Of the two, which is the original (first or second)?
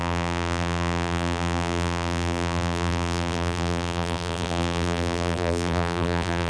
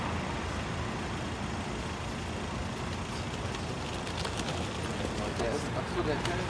second